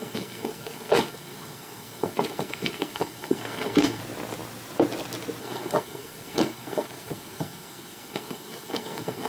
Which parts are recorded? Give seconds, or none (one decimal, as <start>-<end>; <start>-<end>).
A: 4.0-5.4